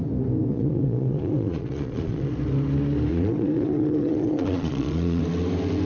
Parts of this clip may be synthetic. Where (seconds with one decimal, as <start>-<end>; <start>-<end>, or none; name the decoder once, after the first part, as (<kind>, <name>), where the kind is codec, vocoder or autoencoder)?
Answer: 0.5-2.3 (vocoder, Vocos); 3.1-5.2